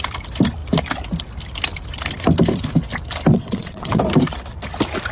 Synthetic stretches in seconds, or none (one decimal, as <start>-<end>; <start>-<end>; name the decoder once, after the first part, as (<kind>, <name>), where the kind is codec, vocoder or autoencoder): 3.3-4.0 (vocoder, WaveNeXt)